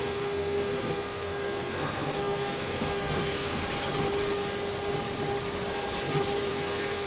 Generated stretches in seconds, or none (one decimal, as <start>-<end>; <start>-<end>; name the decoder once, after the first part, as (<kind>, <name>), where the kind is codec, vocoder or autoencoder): 0.0-3.6 (codec, SNAC); 6.5-7.1